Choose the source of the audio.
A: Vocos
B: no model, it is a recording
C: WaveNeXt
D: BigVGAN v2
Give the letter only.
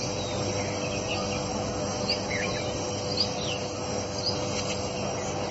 B